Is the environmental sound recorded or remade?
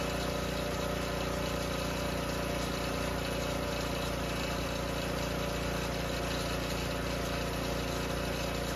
recorded